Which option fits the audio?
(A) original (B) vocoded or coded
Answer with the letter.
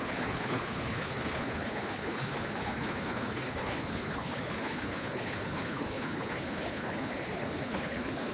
B